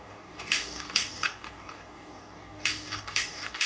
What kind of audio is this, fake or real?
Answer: fake